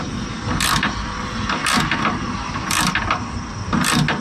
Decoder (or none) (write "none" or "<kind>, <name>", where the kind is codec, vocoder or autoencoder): none